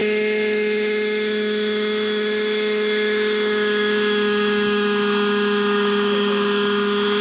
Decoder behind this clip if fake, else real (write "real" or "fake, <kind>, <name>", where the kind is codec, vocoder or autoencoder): fake, autoencoder, DAC-VAE